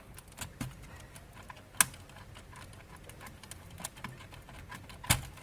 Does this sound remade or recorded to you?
recorded